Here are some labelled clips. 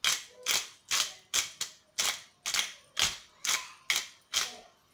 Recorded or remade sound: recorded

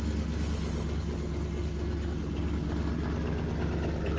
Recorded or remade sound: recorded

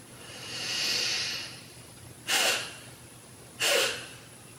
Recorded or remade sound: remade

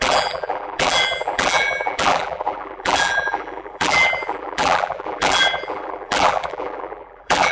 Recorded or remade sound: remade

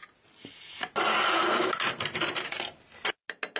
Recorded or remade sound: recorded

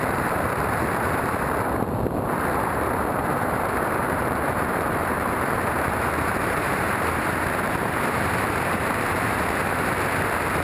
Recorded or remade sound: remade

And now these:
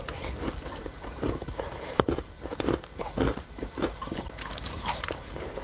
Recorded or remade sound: remade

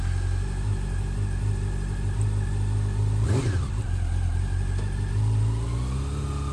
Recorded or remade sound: recorded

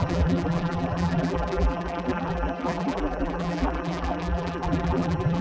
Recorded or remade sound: remade